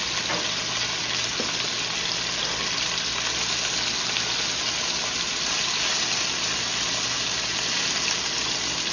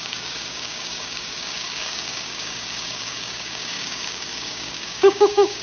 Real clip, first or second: first